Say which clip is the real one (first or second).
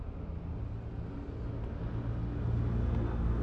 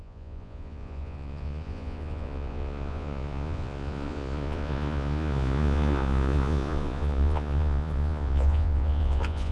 first